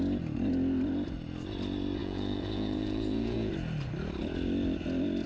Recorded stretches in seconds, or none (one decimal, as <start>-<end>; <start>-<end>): 0.0-2.0; 3.5-5.3